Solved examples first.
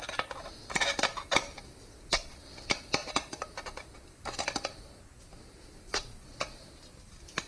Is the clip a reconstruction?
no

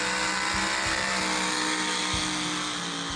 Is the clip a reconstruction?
no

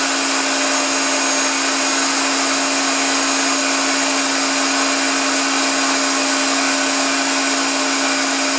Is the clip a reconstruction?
no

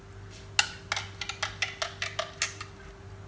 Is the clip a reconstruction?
no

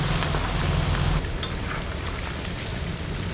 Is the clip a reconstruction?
no